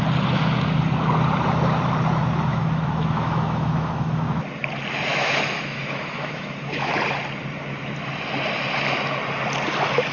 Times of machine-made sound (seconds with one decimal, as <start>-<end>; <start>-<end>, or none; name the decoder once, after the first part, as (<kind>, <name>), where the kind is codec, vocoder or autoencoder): 2.5-4.4 (autoencoder, DAC-VAE); 5.1-6.9